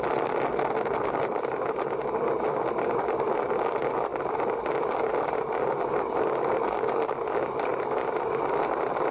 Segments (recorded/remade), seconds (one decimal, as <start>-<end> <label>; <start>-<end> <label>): 0.0-9.1 recorded